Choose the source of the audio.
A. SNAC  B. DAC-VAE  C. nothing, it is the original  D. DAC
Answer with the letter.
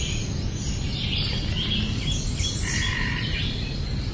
C